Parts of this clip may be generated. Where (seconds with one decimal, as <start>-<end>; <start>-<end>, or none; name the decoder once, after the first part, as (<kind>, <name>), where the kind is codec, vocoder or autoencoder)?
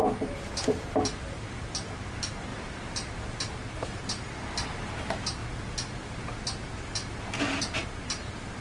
0.0-2.5 (vocoder, BigVGAN v2); 3.4-5.4; 7.4-8.6